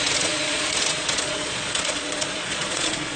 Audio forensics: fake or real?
fake